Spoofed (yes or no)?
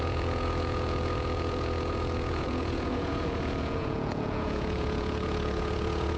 yes